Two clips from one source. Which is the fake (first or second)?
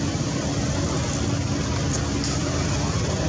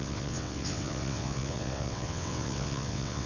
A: second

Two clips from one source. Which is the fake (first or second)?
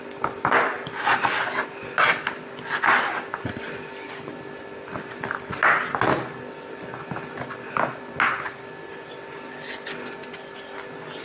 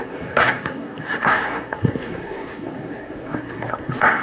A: second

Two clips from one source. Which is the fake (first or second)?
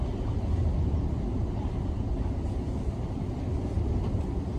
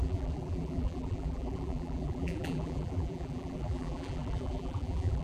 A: second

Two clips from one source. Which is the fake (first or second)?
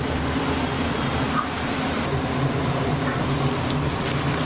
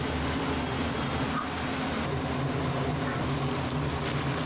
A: first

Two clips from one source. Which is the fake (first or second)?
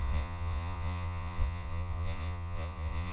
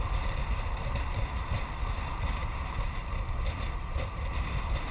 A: first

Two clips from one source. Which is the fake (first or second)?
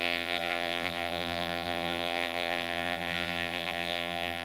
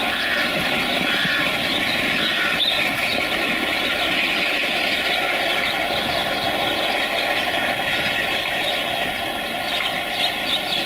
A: first